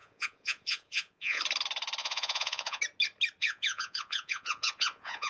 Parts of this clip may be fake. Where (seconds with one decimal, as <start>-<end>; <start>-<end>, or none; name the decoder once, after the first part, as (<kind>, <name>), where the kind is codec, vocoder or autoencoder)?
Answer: 0.0-1.4 (vocoder, Vocos); 2.0-2.8; 3.4-5.3